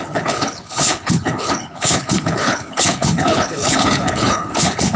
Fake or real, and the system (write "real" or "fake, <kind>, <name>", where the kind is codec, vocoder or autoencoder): fake, codec, HILCodec